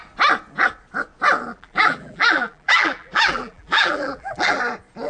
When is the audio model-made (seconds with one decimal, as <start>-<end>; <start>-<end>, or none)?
1.5-4.6